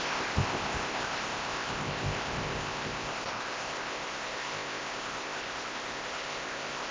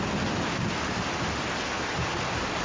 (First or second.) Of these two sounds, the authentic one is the second